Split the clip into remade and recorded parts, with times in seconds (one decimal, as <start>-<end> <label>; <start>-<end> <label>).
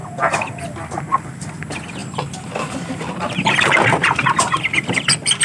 0.0-1.0 recorded; 1.0-5.4 remade